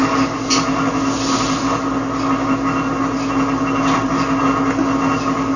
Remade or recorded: recorded